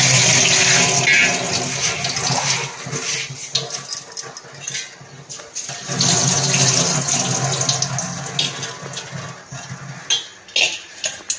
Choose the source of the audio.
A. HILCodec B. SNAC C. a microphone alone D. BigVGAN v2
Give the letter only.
C